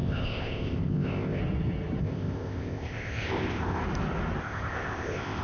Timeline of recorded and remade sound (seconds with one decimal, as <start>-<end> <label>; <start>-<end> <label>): 0.0-1.4 remade; 1.4-2.0 recorded; 2.0-3.8 remade; 3.8-4.4 recorded; 4.4-5.4 remade